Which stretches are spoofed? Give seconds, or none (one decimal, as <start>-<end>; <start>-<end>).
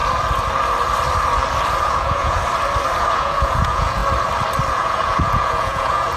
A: 1.8-2.4; 3.0-4.0; 4.7-6.2